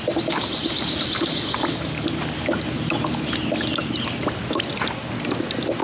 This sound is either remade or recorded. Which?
recorded